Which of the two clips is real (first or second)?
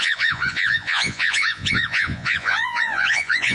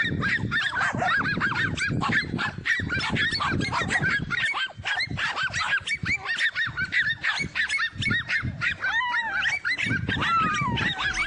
second